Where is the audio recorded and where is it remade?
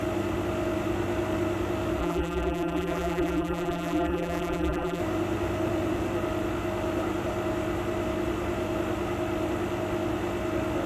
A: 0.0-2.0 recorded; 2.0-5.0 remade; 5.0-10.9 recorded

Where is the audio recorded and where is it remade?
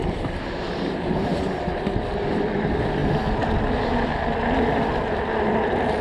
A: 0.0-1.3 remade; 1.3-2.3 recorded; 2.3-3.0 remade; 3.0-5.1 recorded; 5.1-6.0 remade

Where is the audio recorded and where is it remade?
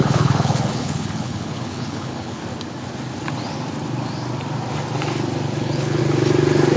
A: 0.0-2.4 remade; 2.4-5.6 recorded; 5.6-6.0 remade; 6.0-6.8 recorded